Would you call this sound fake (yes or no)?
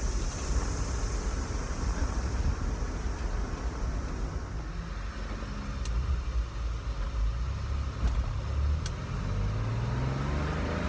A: no